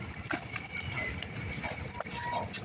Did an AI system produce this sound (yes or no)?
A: no